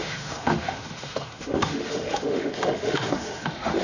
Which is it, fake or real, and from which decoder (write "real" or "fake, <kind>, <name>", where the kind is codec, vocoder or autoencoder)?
fake, autoencoder, DAC-VAE